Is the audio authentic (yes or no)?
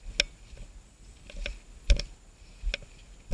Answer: yes